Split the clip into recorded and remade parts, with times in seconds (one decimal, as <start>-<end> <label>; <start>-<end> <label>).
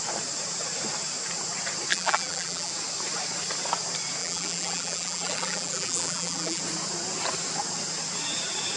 0.0-1.9 recorded; 1.9-2.7 remade; 2.7-4.2 recorded; 4.2-6.6 remade; 6.6-8.8 recorded